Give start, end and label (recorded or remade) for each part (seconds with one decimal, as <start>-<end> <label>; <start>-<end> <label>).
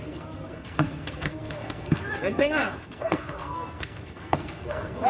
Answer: 0.0-5.1 remade